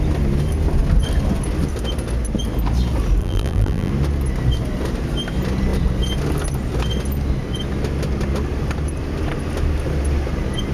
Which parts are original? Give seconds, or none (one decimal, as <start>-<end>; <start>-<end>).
0.0-3.2; 3.9-10.7

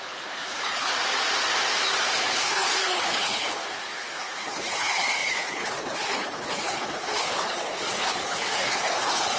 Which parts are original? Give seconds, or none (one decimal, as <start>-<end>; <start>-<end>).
0.9-2.2

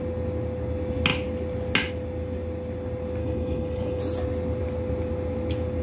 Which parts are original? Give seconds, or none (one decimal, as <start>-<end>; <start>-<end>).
0.0-3.2; 4.0-5.8